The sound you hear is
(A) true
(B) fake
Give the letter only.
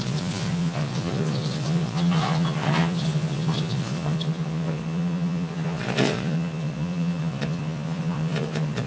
B